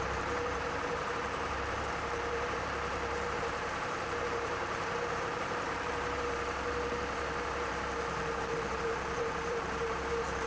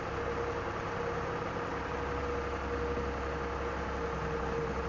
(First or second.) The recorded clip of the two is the second